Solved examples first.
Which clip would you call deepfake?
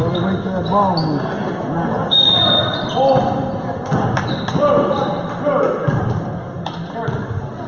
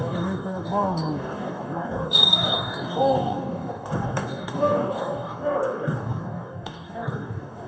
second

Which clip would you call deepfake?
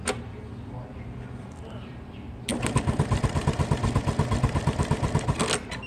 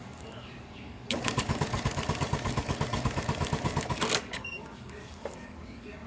second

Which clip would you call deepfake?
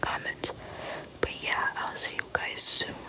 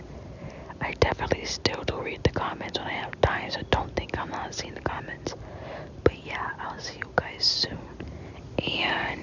first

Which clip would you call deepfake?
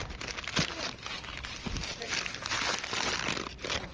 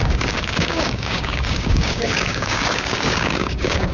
second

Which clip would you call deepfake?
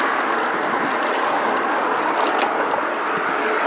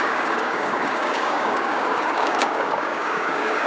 second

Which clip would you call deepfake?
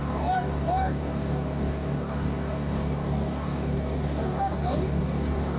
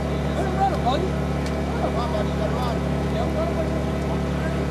first